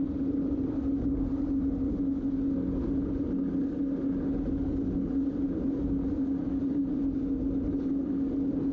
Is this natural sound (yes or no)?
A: yes